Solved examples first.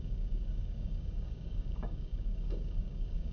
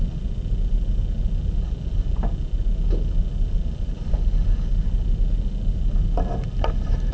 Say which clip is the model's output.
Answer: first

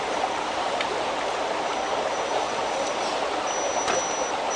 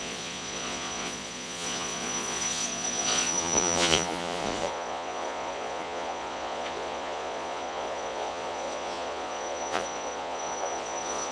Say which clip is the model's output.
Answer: second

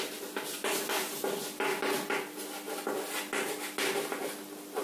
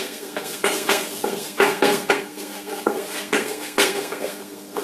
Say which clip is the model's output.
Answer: second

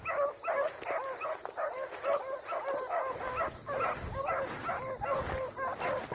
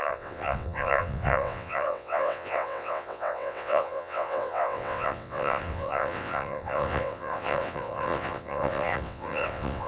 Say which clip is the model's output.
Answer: second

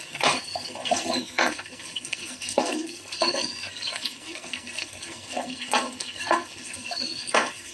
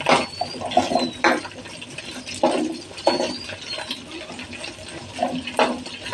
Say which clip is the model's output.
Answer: first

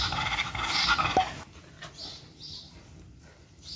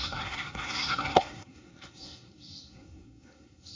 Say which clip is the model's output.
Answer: second